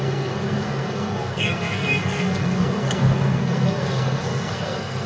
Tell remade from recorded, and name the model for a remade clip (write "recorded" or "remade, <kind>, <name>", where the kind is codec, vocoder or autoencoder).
remade, codec, SNAC